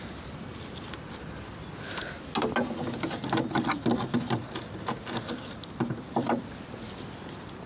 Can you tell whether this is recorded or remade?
recorded